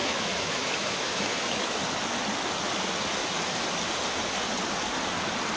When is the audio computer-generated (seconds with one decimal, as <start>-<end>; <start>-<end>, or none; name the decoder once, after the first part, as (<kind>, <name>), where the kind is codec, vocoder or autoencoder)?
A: 0.0-1.8 (autoencoder, DAC-VAE)